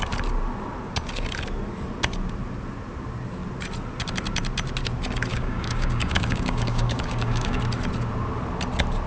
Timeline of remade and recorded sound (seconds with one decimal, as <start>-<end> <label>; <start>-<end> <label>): 0.0-5.3 recorded; 5.3-7.6 remade; 7.6-9.1 recorded